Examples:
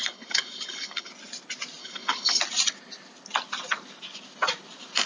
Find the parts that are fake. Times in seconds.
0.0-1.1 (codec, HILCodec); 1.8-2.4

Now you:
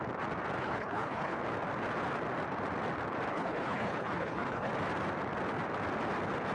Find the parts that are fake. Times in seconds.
0.6-1.4 (codec, HILCodec); 3.3-4.7

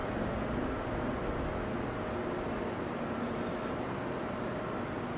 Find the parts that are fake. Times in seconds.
none

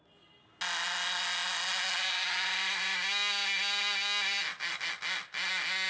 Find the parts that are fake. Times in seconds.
none

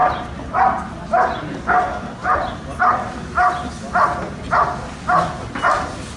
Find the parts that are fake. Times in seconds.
none